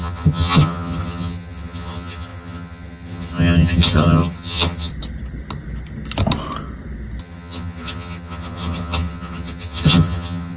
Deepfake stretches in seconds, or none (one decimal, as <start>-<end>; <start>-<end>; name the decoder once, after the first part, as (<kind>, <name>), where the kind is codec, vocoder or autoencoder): 0.0-4.9 (vocoder, HiFi-GAN); 7.2-10.6